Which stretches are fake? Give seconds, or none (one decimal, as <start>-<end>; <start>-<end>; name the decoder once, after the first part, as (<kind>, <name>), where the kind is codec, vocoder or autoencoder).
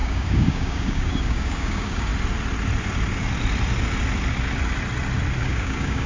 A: 0.0-2.1 (codec, DAC); 5.4-6.1